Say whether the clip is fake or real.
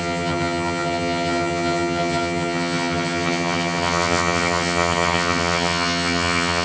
fake